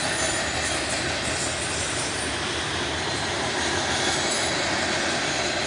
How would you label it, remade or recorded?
recorded